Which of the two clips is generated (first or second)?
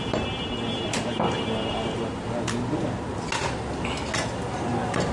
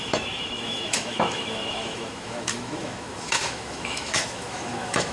second